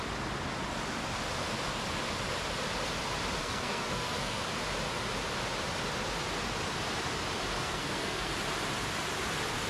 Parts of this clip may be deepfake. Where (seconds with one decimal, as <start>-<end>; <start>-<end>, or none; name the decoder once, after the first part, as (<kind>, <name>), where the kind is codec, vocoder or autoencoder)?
3.4-4.4 (codec, SNAC); 7.6-8.3